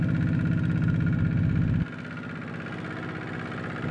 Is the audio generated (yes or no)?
no